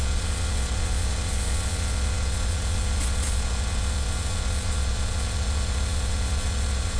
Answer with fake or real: fake